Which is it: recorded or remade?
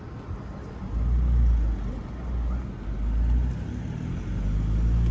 recorded